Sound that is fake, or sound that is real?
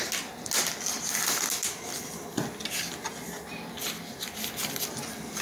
real